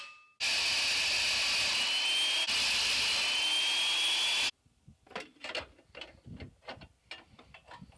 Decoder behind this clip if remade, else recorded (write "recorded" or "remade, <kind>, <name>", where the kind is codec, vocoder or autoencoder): recorded